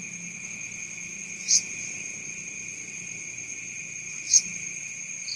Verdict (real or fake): real